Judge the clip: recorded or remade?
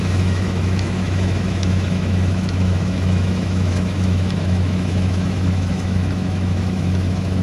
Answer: remade